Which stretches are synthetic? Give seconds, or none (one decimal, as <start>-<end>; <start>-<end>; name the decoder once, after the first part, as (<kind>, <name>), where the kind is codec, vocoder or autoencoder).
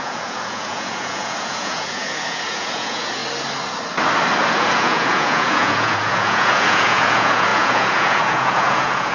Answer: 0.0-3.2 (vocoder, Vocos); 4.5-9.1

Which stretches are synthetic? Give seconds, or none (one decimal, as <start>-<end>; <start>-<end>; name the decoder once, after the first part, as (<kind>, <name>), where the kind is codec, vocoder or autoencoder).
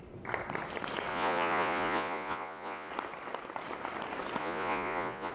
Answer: 1.1-2.9 (vocoder, Vocos); 4.4-5.3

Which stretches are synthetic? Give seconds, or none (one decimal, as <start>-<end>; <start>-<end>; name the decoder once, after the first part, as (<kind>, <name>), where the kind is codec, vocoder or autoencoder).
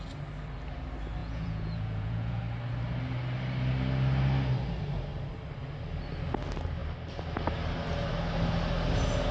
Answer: 1.2-2.4 (vocoder, Vocos)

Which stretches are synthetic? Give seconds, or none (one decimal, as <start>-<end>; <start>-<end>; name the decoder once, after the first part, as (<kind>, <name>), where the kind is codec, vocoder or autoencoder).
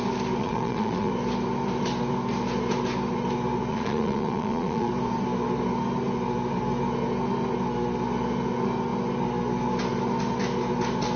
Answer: 0.4-1.1 (vocoder, Vocos); 3.7-4.9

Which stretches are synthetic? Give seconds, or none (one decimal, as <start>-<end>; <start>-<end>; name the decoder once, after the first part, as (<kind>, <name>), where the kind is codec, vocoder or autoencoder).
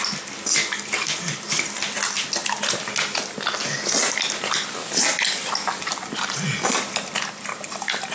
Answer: none